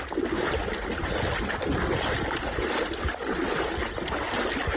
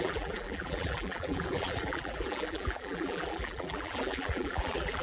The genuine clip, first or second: first